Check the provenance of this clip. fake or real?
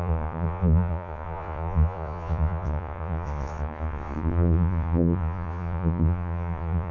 fake